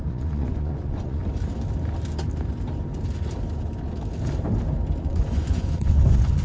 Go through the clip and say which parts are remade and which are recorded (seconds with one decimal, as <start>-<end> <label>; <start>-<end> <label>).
0.0-1.2 remade; 1.2-5.0 recorded; 5.0-6.4 remade